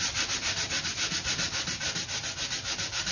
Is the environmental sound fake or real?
real